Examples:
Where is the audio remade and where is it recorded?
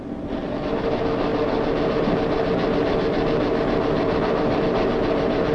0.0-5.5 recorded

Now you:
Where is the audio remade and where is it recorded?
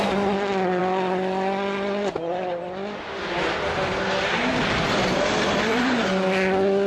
0.0-6.9 recorded